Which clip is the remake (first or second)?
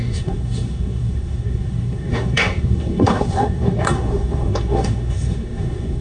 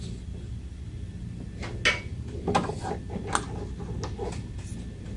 first